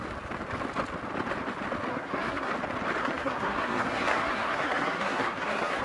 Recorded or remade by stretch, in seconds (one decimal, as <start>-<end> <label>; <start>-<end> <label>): 0.0-1.9 recorded; 1.9-2.5 remade; 2.5-3.0 recorded; 3.0-5.8 remade